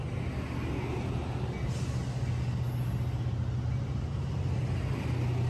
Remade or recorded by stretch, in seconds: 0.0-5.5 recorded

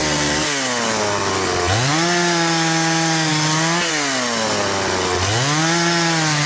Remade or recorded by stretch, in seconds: 0.0-6.5 recorded

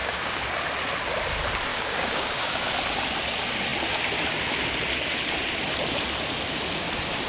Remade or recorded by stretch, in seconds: 0.0-0.5 remade; 0.5-1.7 recorded; 1.7-2.6 remade; 2.6-7.3 recorded